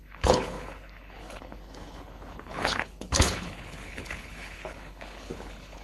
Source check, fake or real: fake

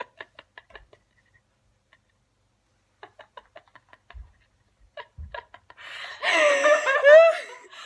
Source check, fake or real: real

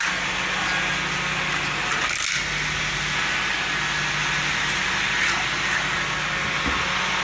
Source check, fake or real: real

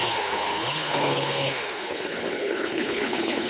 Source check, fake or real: fake